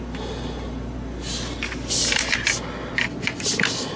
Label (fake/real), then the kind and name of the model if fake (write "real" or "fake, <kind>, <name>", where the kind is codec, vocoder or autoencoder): real